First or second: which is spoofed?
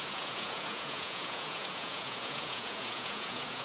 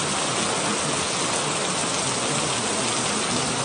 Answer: first